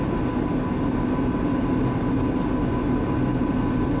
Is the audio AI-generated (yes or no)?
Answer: no